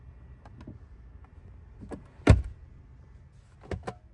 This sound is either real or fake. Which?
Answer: real